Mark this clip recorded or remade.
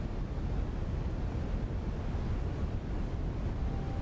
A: recorded